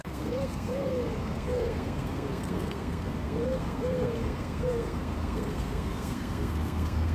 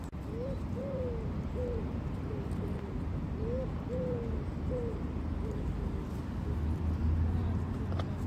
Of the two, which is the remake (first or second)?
first